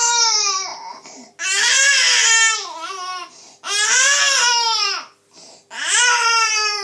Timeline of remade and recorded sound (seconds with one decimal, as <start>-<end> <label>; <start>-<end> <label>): 0.0-6.8 recorded